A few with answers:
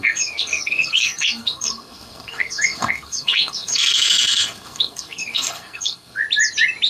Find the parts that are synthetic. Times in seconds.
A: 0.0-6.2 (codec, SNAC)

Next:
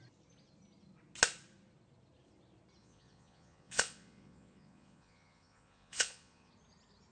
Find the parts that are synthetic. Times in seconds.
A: 2.8-6.5 (vocoder, Vocos)

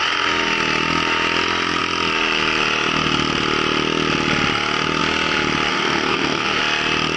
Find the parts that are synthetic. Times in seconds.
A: 5.7-6.6 (codec, SNAC)

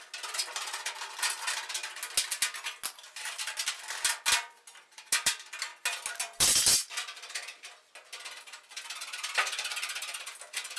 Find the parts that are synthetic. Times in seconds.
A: none

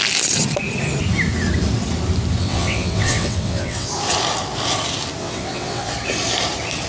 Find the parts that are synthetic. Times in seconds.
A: 2.4-3.9 (vocoder, WaveNeXt); 5.2-5.9

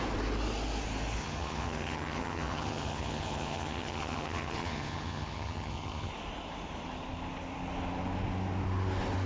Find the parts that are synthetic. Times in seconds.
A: 1.2-6.1 (vocoder, HiFi-GAN)